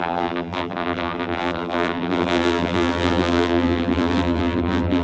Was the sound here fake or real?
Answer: fake